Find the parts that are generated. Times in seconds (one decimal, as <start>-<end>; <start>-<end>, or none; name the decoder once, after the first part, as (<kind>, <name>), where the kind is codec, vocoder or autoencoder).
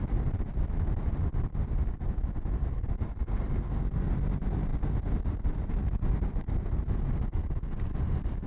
none